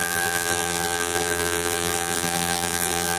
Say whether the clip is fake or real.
fake